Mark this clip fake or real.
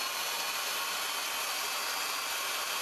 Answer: real